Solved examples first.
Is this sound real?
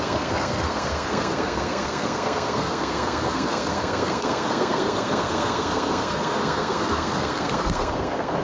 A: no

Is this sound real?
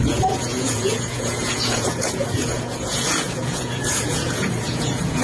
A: no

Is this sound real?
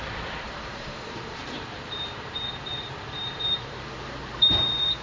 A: no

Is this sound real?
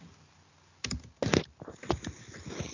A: yes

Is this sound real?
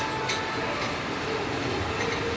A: yes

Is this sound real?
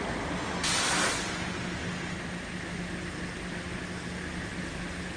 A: yes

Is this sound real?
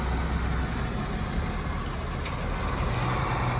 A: yes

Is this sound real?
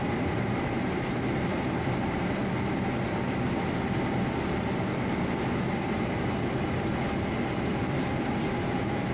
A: yes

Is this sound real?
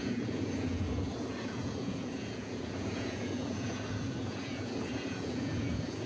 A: no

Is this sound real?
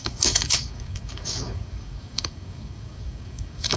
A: no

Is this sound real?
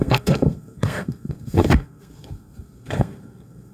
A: no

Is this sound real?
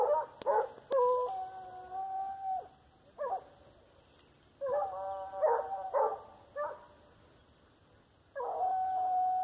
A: yes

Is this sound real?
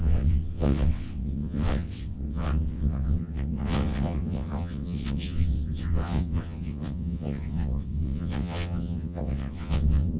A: no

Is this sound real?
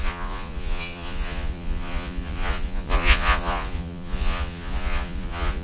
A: no